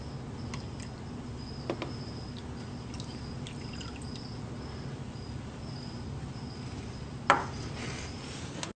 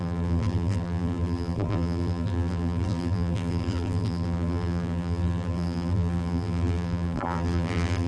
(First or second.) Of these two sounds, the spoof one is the second